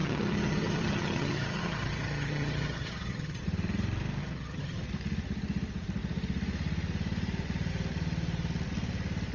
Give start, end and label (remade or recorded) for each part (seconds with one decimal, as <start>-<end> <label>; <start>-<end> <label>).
0.0-3.4 remade; 3.4-4.2 recorded; 4.2-4.8 remade; 4.8-9.3 recorded